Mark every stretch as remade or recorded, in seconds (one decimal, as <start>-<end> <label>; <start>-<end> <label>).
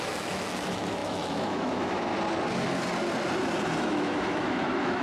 0.0-2.1 remade; 2.1-3.8 recorded; 3.8-5.0 remade